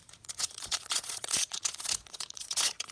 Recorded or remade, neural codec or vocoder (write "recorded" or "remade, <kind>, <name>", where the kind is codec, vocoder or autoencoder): remade, vocoder, Vocos